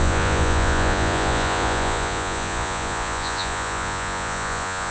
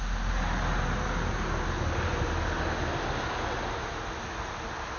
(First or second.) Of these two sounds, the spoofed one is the first